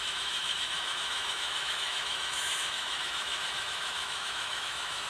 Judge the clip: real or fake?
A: fake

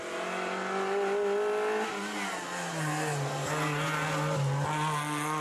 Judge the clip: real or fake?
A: real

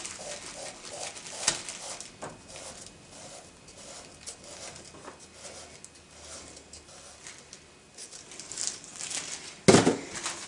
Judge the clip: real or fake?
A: real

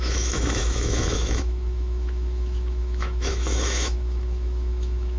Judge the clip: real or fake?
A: fake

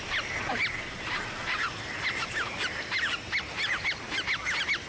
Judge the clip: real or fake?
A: real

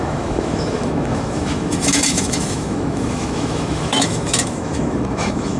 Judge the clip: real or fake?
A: fake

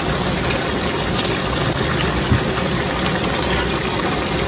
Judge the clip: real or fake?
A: real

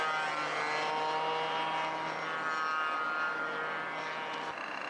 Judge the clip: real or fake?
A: real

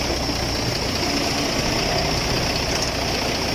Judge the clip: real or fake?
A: real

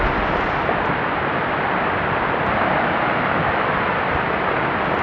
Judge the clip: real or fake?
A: real